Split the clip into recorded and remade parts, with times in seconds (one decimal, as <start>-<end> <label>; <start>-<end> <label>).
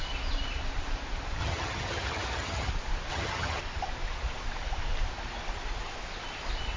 0.0-1.4 recorded; 1.4-2.7 remade; 2.7-3.1 recorded; 3.1-3.6 remade; 3.6-6.8 recorded